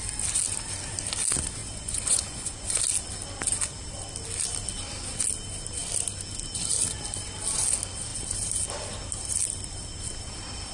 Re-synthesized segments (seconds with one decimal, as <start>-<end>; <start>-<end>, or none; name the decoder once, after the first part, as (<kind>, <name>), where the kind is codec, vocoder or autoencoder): 1.6-2.8 (vocoder, Vocos)